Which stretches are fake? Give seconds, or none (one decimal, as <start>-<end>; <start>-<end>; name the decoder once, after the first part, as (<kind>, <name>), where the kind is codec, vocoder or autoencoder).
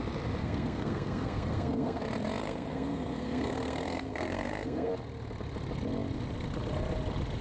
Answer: 0.4-2.0 (codec, SNAC); 2.4-4.9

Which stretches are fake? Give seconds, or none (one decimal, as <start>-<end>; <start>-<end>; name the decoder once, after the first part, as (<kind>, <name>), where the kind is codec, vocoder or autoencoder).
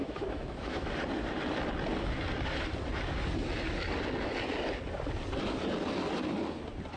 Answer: 0.0-0.9 (autoencoder, DAC-VAE)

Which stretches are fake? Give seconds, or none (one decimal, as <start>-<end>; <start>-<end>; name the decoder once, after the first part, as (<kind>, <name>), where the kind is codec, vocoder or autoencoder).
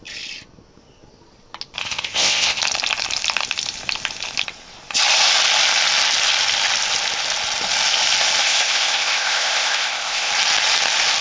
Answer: 1.8-2.6 (codec, ZipCodec); 8.4-10.3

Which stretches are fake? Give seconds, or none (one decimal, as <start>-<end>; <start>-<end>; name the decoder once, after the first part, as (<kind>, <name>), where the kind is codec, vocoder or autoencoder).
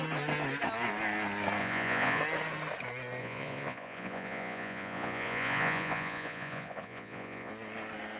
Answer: 1.6-2.2 (vocoder, Vocos); 3.2-7.5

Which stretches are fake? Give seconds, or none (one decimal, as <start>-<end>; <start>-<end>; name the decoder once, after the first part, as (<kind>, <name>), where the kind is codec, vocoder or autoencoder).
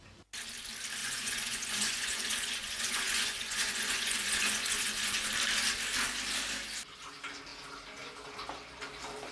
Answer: 1.0-5.3 (vocoder, Vocos)